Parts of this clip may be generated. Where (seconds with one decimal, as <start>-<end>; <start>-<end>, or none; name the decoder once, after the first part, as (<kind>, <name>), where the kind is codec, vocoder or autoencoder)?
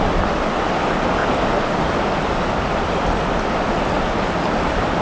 none